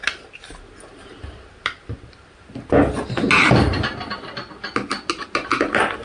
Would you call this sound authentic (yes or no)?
yes